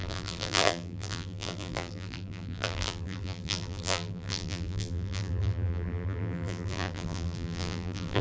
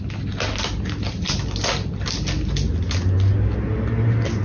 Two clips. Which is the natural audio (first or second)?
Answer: second